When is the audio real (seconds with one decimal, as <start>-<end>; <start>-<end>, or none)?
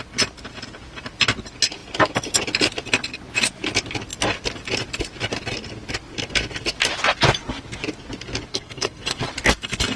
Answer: 0.0-8.5; 9.2-10.0